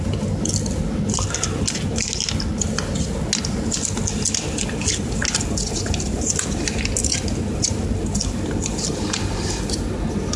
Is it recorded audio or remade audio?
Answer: recorded